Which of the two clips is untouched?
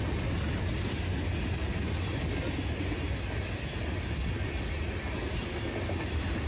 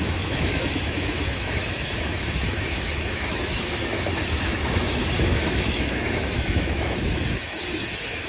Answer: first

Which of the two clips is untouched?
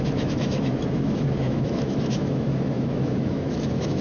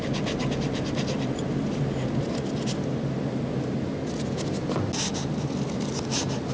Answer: second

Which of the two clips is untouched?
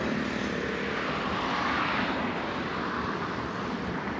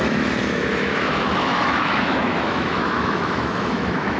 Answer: first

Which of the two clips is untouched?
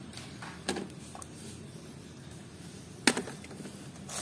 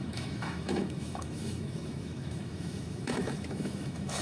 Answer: first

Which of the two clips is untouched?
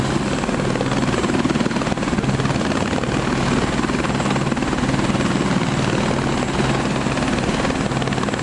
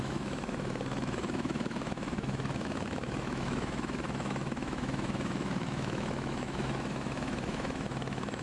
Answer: first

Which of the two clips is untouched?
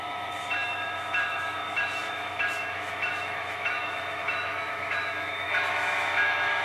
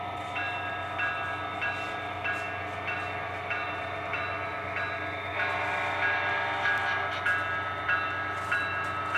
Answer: second